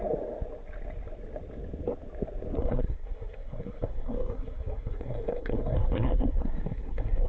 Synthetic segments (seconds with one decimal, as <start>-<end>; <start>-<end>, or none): 2.6-7.3